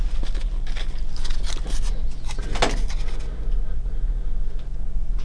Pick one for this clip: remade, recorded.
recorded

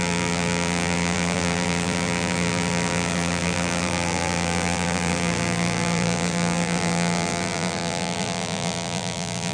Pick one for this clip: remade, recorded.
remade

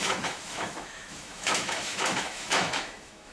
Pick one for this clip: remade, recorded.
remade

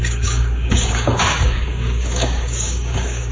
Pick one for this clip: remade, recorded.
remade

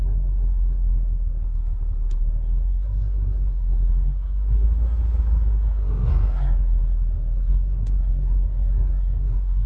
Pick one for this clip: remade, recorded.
remade